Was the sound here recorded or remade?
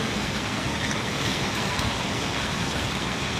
remade